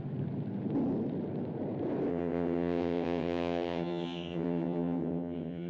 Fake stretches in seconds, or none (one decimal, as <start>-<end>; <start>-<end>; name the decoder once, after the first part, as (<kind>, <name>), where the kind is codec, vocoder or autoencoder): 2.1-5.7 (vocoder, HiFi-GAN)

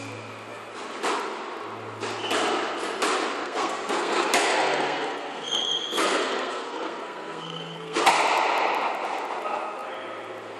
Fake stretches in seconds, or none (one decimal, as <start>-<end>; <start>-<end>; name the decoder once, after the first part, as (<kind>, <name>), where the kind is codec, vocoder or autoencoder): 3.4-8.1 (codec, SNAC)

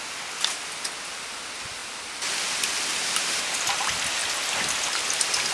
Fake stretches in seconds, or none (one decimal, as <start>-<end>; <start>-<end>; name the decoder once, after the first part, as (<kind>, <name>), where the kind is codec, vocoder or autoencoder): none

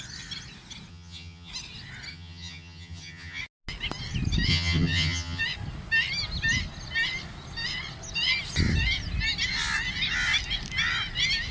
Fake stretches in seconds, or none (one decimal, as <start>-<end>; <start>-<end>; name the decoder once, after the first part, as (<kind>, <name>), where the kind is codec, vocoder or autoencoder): 0.9-1.5 (vocoder, HiFi-GAN); 2.1-3.4; 4.5-5.4